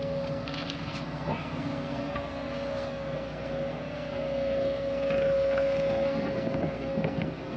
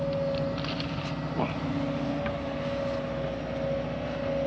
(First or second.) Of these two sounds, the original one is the second